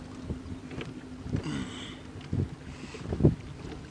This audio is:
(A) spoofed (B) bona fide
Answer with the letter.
B